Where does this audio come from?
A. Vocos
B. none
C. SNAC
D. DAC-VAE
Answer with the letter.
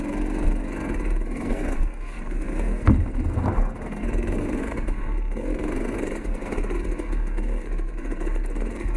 C